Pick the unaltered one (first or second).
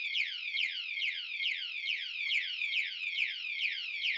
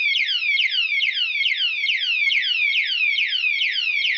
second